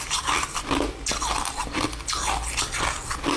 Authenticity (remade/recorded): recorded